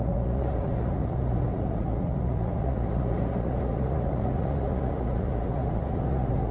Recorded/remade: remade